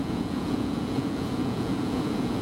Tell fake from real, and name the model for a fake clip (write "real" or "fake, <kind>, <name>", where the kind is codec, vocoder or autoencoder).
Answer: fake, vocoder, Vocos